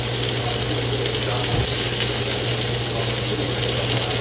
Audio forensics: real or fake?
real